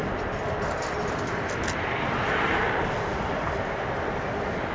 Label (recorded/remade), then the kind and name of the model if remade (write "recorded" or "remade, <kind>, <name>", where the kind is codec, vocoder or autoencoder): recorded